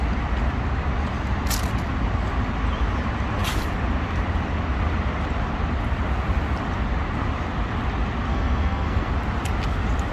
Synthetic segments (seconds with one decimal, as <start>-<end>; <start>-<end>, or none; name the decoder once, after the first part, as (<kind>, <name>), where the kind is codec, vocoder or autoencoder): 8.3-9.1 (codec, SNAC)